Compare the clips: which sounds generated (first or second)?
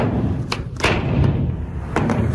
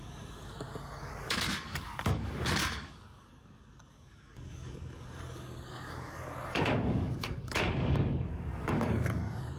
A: second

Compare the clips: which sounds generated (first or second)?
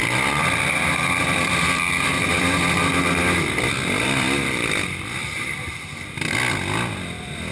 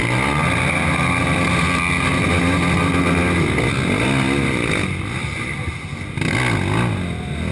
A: first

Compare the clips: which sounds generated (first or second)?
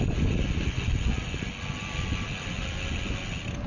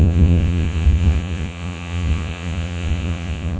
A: second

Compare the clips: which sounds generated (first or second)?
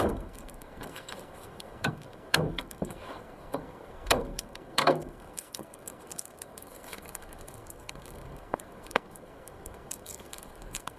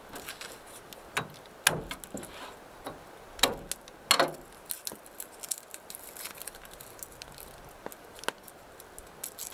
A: first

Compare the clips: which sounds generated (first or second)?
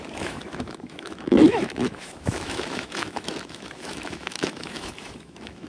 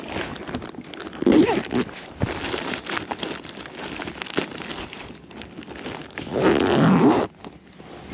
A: first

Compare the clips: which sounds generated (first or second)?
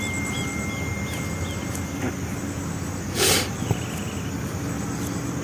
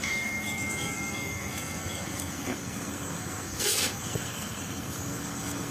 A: second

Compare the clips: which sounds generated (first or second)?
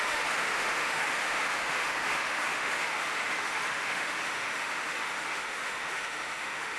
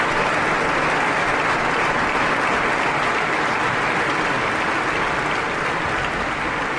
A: first